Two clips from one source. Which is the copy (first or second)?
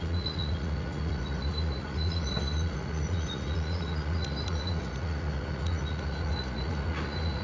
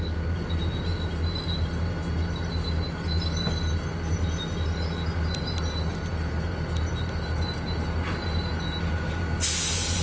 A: first